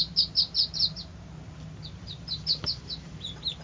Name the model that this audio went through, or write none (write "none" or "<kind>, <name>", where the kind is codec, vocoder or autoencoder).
none